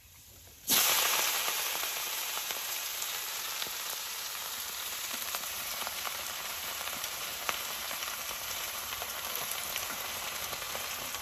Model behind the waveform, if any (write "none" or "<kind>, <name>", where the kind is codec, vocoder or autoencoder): vocoder, BigVGAN v2